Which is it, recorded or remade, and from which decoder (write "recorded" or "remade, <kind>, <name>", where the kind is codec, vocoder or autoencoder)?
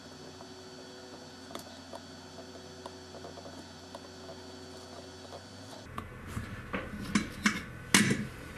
recorded